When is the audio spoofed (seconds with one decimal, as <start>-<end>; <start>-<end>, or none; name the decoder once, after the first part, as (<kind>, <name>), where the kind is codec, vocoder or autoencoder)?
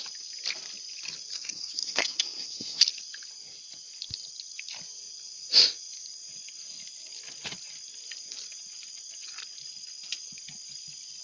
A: 1.3-2.8 (codec, SNAC)